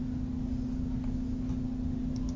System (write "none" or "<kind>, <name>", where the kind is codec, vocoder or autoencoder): none